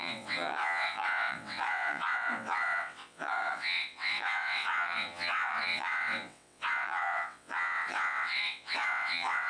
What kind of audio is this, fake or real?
fake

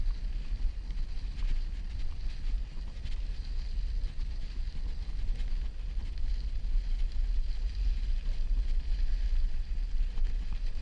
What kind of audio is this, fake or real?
real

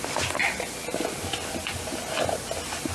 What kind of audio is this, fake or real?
real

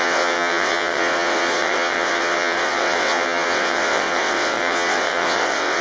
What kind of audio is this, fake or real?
fake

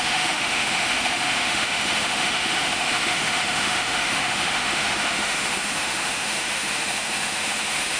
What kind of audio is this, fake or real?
fake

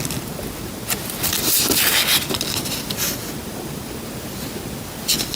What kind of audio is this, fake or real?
real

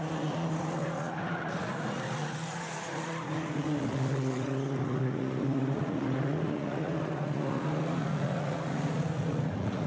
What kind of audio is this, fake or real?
fake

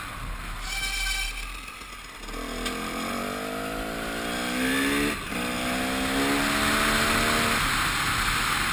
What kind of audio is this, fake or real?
real